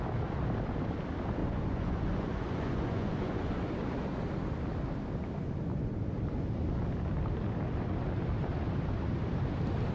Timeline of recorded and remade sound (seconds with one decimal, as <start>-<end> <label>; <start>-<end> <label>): 0.0-1.4 recorded; 1.4-3.7 remade; 3.7-9.9 recorded